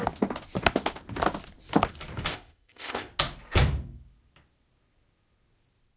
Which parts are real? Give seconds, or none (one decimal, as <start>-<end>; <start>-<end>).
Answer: 0.0-2.3; 3.1-6.0